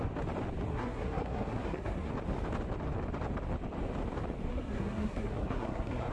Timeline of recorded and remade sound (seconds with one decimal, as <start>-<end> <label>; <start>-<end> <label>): 0.0-0.7 recorded; 0.7-2.1 remade; 2.1-4.5 recorded; 4.5-6.1 remade